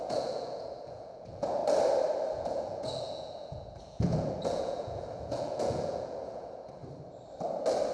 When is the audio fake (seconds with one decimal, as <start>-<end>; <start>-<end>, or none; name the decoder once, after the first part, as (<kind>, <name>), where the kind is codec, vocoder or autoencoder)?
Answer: 0.0-1.6 (vocoder, Vocos); 2.3-6.8